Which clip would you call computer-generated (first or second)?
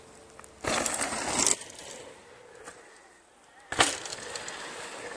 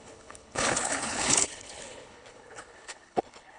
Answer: second